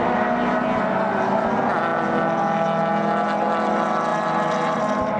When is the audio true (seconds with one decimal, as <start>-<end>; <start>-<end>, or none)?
0.0-5.2